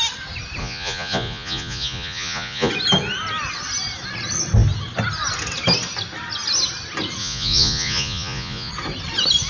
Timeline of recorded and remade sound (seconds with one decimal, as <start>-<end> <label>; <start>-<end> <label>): 0.0-0.6 recorded; 0.6-2.7 remade; 2.7-7.2 recorded; 7.2-8.7 remade; 8.7-9.5 recorded